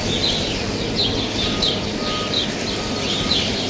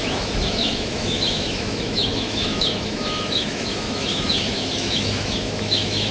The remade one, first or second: second